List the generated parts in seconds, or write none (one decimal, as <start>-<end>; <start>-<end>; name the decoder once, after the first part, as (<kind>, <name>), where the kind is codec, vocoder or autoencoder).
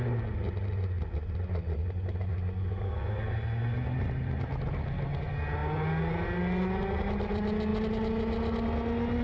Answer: none